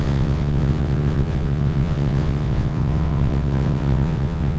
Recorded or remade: remade